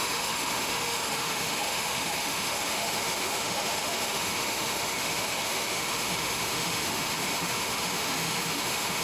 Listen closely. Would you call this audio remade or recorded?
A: remade